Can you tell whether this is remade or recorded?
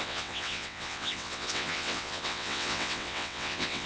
remade